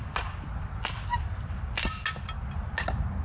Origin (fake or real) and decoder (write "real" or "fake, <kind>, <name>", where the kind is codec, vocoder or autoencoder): real